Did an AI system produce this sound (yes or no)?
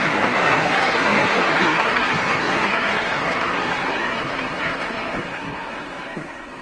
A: yes